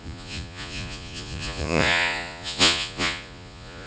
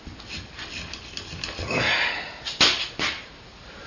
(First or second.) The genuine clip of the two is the second